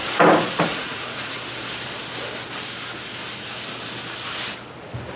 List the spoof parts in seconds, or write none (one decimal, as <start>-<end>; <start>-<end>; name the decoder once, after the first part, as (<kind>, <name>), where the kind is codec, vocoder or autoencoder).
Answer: 0.7-1.4 (vocoder, Vocos)